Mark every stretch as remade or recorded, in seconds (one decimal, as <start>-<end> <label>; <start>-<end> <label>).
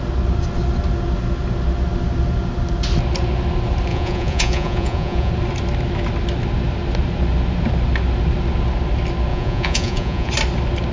0.0-3.9 recorded; 3.9-5.3 remade; 5.3-9.3 recorded; 9.3-10.3 remade; 10.3-10.9 recorded